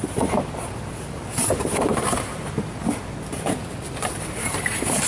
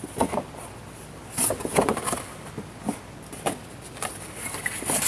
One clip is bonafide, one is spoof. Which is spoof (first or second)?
first